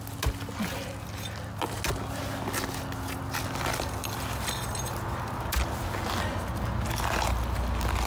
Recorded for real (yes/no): yes